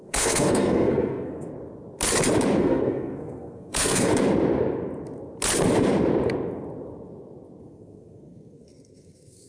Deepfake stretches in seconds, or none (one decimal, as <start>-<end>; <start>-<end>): 0.0-1.5; 2.6-4.1; 7.6-9.5